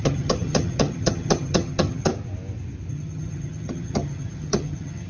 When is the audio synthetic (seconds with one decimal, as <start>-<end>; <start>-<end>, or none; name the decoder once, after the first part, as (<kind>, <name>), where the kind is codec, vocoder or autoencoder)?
0.0-2.1 (vocoder, HiFi-GAN); 2.9-5.1